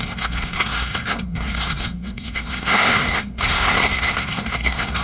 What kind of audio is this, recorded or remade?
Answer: remade